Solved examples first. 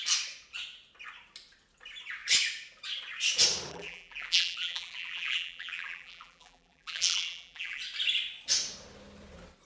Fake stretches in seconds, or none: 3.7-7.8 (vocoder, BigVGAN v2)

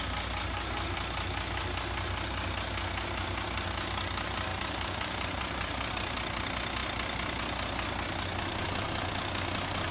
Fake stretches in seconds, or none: 4.5-5.9 (vocoder, BigVGAN v2)